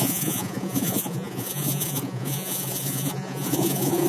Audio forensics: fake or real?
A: fake